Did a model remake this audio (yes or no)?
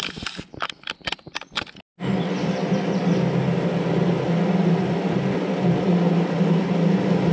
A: no